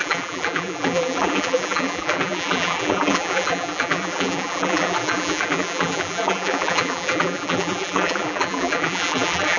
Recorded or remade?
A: remade